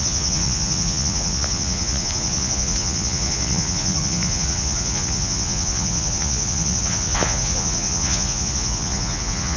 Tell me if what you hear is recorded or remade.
remade